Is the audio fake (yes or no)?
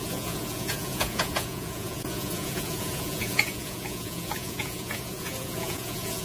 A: yes